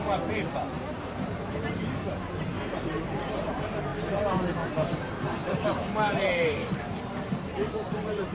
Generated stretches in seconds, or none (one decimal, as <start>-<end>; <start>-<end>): 0.0-3.9; 4.5-8.3